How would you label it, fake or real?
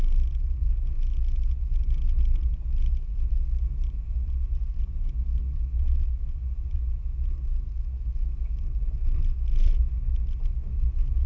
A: real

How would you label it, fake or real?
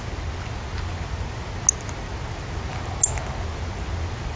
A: real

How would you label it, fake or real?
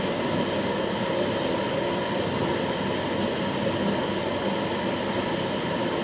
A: real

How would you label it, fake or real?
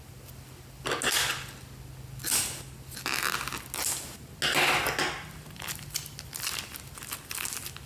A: real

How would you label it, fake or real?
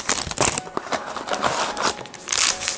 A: real